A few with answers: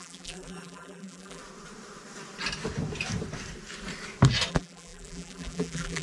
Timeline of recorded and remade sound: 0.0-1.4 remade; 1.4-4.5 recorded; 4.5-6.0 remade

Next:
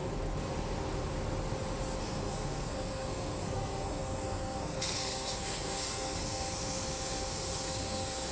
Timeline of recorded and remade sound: 0.0-2.0 recorded; 2.0-8.3 remade